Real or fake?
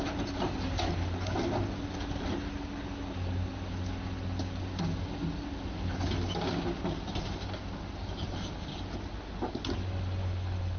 real